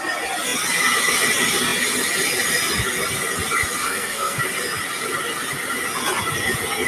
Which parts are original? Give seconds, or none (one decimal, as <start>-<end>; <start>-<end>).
0.0-3.8; 4.4-6.9